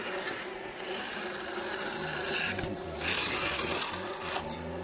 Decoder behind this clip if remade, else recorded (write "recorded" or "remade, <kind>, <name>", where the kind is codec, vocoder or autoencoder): recorded